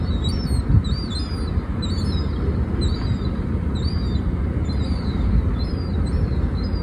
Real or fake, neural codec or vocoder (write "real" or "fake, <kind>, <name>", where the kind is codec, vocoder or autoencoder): real